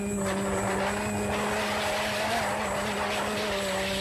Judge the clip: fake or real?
real